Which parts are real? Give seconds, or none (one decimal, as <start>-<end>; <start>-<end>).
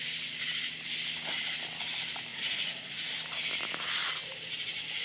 0.0-2.3; 3.1-5.0